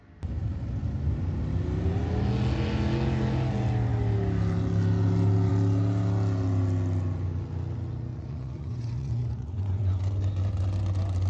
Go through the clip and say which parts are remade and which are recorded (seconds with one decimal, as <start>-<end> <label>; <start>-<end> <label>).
0.0-8.1 recorded; 8.1-10.0 remade; 10.0-11.3 recorded